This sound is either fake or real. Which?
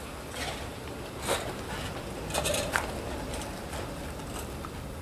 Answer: real